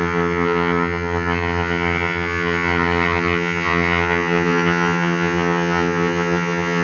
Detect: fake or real fake